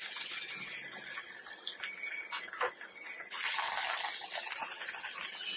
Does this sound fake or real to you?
real